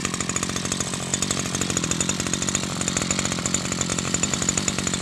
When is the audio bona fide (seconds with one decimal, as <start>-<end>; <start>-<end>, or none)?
0.0-3.9